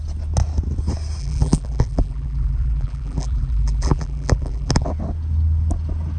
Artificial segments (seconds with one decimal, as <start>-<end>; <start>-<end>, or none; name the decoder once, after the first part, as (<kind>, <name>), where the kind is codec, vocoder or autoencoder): 1.2-4.9 (vocoder, BigVGAN v2)